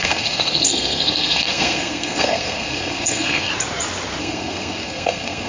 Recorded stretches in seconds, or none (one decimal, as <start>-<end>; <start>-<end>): 3.5-4.2